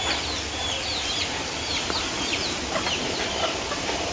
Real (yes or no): no